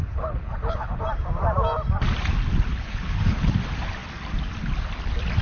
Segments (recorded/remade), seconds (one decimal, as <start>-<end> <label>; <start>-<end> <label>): 0.0-1.0 remade; 1.0-2.7 recorded; 2.7-3.5 remade; 3.5-5.4 recorded

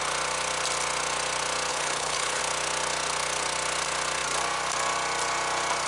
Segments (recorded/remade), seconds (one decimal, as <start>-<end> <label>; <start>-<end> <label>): 0.0-1.7 recorded; 1.7-2.4 remade; 2.4-5.9 recorded

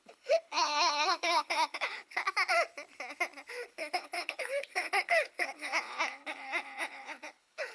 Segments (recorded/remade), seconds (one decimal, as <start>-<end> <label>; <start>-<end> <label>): 0.0-2.2 remade; 2.2-3.5 recorded; 3.5-7.7 remade

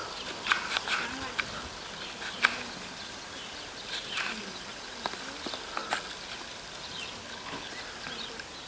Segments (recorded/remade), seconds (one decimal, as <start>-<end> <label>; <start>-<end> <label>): 0.0-7.2 recorded; 7.2-7.7 remade; 7.7-8.7 recorded

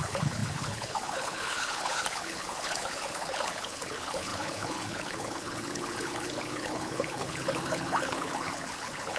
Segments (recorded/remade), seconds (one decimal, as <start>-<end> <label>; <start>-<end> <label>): 0.0-9.2 remade

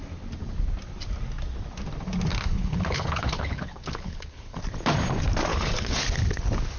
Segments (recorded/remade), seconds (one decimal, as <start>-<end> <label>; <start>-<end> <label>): 0.0-2.3 recorded; 2.3-4.6 remade; 4.6-5.5 recorded; 5.5-6.0 remade; 6.0-6.8 recorded